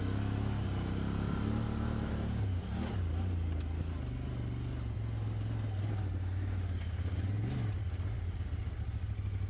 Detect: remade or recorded recorded